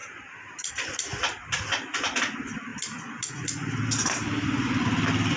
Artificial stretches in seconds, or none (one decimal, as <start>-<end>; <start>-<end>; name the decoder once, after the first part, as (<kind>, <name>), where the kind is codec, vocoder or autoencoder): none